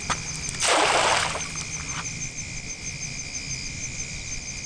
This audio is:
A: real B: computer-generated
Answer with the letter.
A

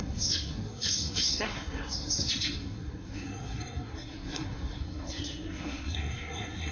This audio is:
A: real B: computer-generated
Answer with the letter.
B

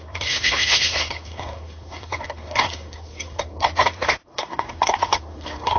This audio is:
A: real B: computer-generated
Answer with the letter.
B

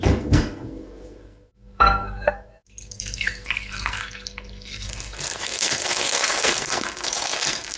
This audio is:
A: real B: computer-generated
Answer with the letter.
B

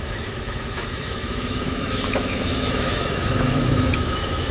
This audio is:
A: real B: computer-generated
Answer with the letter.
B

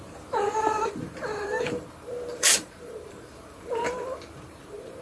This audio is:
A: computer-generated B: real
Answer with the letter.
A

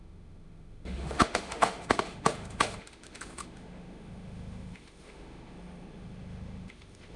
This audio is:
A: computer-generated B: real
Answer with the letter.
A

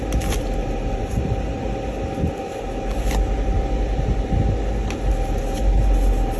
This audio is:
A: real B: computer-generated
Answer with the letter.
A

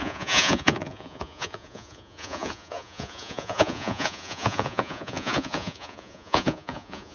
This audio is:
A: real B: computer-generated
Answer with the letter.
B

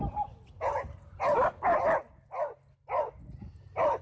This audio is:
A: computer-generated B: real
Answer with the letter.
B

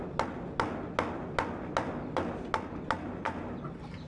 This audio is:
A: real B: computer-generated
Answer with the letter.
A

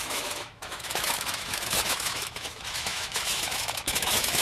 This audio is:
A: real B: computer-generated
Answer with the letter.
B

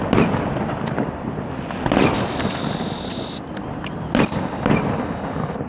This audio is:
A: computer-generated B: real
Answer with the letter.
B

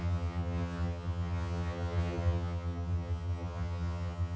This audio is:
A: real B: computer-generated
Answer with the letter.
B